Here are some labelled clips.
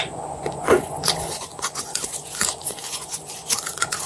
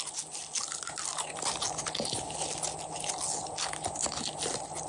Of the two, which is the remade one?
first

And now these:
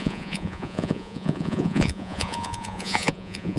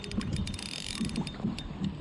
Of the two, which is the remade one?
first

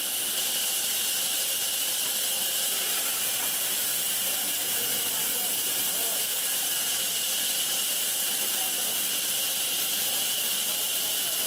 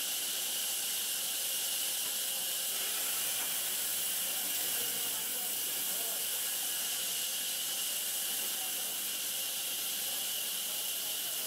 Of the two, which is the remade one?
first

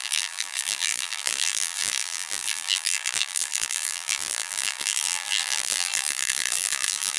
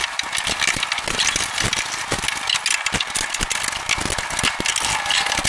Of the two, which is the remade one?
first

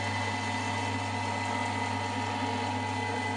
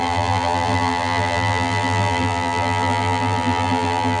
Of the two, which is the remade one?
second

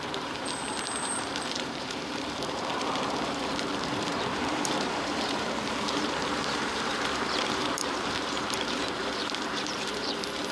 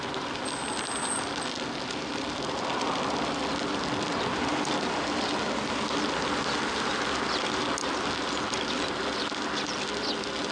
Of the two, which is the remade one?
first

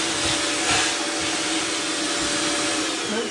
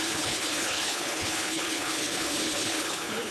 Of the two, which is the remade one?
second